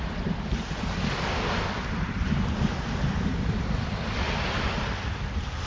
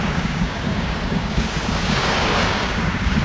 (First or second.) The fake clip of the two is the second